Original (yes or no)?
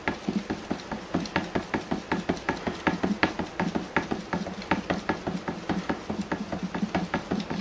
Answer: yes